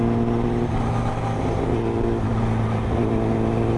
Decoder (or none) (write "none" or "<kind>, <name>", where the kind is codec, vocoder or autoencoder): none